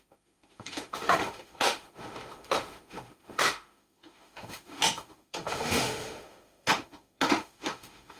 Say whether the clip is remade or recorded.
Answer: remade